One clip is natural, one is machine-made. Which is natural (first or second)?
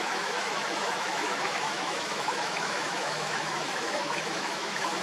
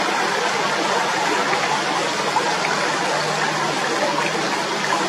second